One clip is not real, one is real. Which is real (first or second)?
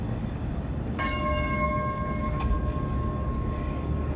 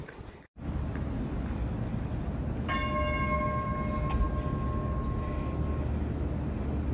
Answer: second